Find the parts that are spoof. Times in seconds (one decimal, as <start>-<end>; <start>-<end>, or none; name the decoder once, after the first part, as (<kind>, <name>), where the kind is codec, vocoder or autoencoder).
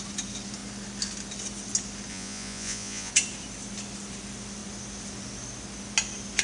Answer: 2.1-3.1 (vocoder, Vocos)